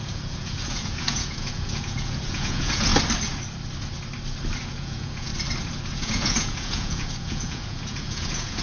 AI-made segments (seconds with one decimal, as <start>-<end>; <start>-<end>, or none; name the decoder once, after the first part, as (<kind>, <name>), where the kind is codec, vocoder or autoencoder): 0.0-2.9 (vocoder, Vocos); 4.6-5.3; 5.9-8.6